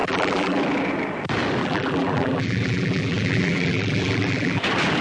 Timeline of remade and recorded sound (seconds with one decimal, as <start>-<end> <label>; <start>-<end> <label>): 0.0-0.6 remade; 0.6-1.6 recorded; 1.6-4.6 remade; 4.6-5.0 recorded